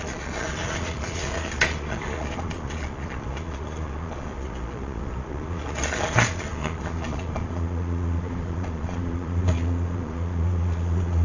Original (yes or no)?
no